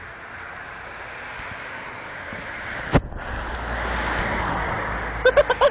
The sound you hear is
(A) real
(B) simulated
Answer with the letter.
A